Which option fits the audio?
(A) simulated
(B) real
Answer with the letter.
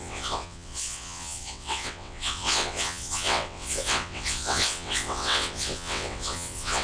A